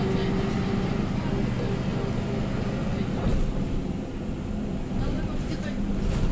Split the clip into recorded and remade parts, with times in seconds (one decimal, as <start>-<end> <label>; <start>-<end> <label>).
0.0-6.3 recorded